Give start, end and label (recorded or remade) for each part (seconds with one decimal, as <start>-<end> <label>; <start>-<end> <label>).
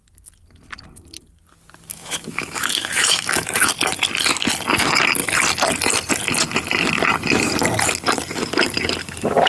0.0-1.9 recorded; 1.9-3.7 remade; 3.7-9.5 recorded